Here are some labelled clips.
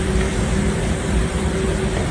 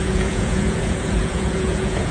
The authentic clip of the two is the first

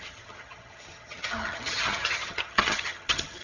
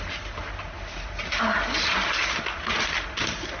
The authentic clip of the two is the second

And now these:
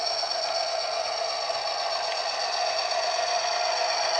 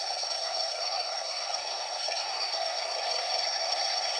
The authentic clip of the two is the first